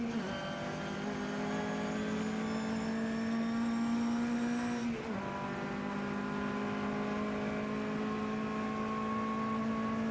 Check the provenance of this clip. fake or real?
real